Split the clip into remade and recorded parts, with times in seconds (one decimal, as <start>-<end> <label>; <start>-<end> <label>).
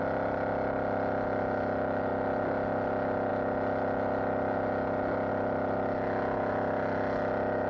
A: 0.0-7.7 recorded